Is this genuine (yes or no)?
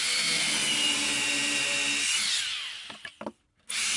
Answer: yes